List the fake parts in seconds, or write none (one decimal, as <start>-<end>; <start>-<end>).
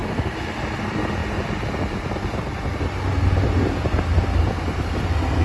0.0-0.5